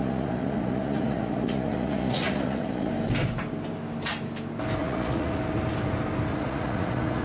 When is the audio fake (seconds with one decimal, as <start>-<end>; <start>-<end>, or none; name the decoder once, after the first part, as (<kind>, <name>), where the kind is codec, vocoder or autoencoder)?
0.0-2.9 (vocoder, Vocos); 4.8-5.4; 6.3-7.2